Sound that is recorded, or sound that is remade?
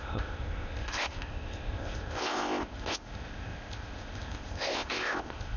remade